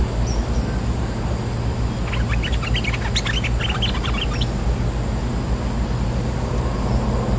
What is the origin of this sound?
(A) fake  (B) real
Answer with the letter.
B